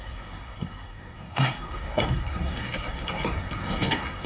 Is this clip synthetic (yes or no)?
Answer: yes